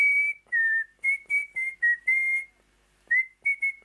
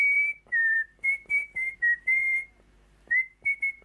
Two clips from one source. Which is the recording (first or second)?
first